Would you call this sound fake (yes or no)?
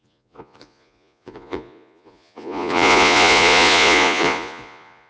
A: yes